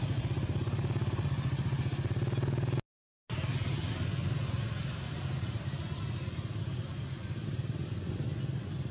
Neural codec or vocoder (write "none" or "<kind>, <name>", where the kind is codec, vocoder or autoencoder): none